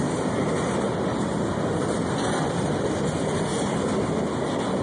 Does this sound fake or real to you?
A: real